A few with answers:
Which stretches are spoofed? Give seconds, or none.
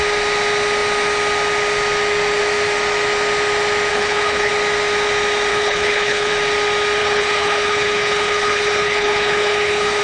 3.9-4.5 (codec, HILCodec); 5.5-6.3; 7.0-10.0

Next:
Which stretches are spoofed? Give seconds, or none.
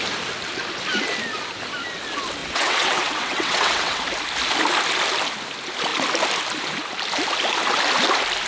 2.4-4.0 (vocoder, WaveNeXt)